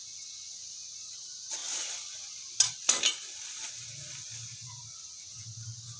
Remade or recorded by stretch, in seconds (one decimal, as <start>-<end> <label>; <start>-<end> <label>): 0.0-6.0 recorded